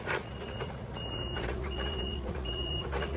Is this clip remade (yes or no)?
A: yes